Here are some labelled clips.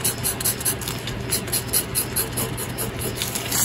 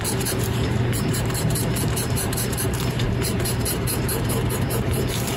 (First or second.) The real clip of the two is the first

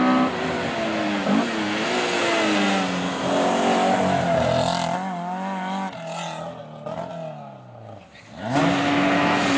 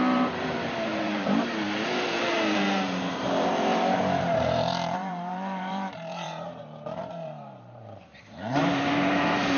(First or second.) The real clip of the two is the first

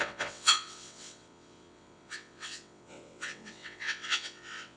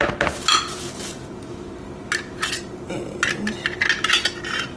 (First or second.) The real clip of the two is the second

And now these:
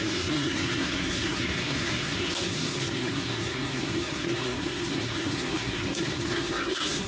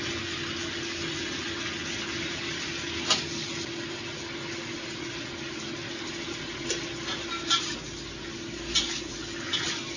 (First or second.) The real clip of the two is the second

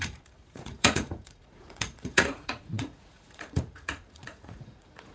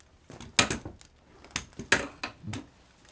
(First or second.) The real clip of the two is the second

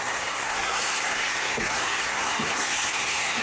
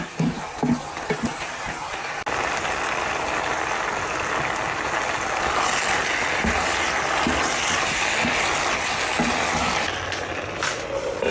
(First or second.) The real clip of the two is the second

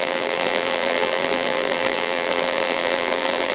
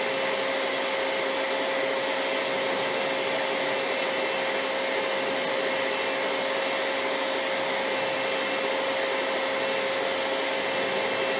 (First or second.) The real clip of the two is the second